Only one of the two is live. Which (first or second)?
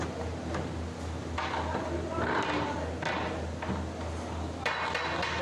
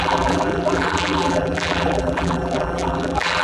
first